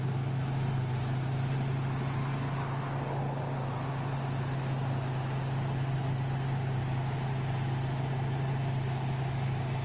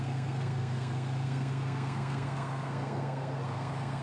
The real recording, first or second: first